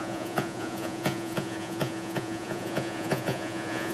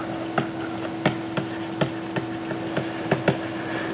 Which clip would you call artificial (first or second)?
first